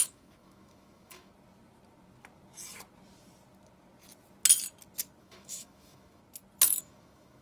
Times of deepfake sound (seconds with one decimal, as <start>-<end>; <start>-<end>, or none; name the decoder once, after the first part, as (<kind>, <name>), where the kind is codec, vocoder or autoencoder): 0.0-1.3 (autoencoder, DAC-VAE); 5.2-6.2; 6.8-7.4